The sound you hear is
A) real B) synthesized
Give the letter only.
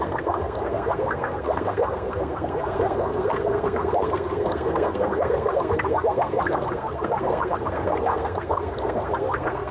B